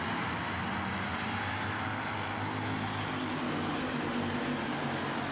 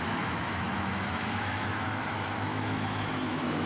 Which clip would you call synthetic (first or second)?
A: second